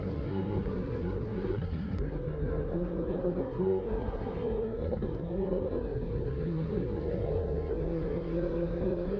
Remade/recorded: remade